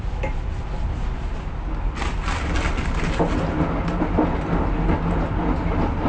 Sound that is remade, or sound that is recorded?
recorded